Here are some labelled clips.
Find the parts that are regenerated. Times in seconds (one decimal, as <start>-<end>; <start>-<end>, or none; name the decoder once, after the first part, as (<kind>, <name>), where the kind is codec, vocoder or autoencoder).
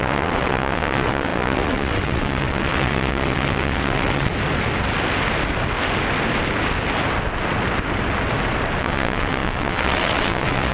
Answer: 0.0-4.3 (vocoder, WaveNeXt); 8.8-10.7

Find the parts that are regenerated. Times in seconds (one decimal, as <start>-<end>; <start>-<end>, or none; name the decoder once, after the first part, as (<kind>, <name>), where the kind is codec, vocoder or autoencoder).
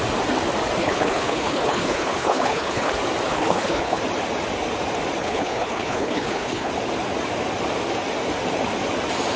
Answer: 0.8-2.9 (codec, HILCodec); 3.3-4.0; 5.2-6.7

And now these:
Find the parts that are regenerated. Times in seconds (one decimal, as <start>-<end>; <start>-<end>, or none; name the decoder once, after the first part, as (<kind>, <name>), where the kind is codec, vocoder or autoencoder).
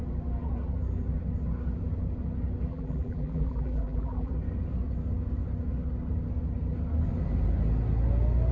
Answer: 2.7-4.3 (vocoder, BigVGAN v2)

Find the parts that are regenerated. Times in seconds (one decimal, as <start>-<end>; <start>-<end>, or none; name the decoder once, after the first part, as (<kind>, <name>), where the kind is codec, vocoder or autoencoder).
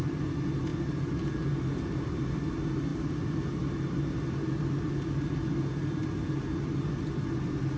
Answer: none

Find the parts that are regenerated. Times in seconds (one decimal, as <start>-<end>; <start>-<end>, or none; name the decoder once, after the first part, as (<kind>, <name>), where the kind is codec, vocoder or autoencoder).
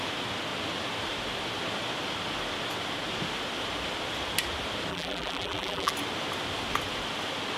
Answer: 4.9-5.9 (vocoder, BigVGAN v2)